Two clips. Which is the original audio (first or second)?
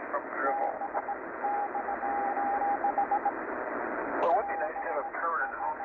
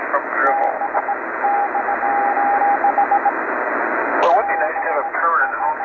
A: second